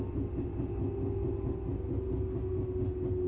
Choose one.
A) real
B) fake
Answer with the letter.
A